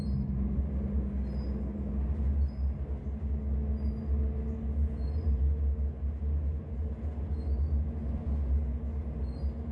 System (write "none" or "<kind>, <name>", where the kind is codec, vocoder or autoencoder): none